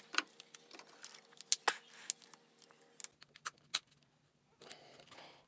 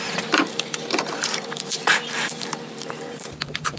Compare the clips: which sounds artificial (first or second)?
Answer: second